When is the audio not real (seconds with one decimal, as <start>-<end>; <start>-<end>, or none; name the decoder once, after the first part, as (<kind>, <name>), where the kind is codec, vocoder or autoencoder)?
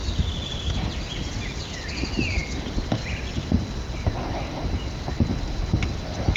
none